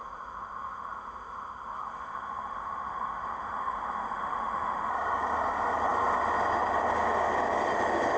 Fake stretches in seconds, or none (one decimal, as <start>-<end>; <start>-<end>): 0.0-4.9